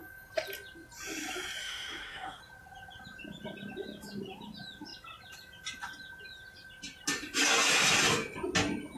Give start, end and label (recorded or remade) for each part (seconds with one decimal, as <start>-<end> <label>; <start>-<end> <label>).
0.0-1.6 recorded; 1.6-2.4 remade; 2.4-9.0 recorded